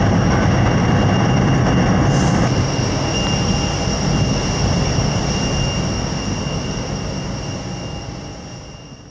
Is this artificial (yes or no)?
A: no